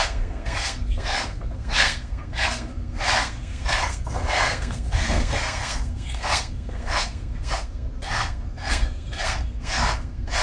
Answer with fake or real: fake